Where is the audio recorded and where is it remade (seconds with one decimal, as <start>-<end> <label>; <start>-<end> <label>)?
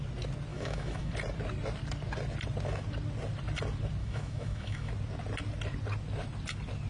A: 0.0-0.5 recorded; 0.5-1.1 remade; 1.1-4.0 recorded; 4.0-4.9 remade; 4.9-6.9 recorded